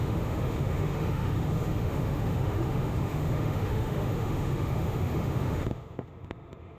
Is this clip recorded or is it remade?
remade